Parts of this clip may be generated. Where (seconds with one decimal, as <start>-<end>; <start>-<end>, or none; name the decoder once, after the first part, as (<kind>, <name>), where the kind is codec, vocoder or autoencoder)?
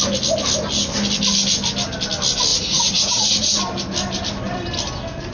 2.5-3.6 (vocoder, Vocos)